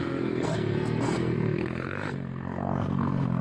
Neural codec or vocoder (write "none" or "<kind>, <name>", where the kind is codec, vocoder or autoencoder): codec, SNAC